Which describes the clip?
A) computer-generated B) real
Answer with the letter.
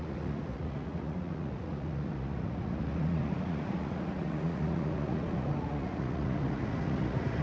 A